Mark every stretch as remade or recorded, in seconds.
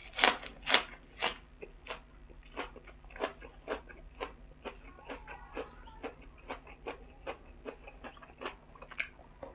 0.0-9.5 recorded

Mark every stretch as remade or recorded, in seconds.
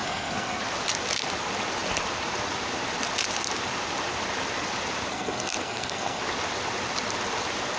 0.0-0.6 remade; 0.6-5.1 recorded; 5.1-6.2 remade; 6.2-7.8 recorded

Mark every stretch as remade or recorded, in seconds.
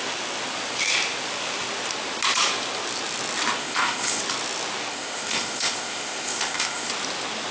0.0-3.6 recorded; 3.6-4.2 remade; 4.2-4.9 recorded; 4.9-6.9 remade; 6.9-7.5 recorded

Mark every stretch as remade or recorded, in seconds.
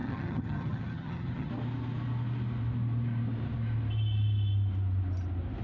0.0-1.5 remade; 1.5-5.6 recorded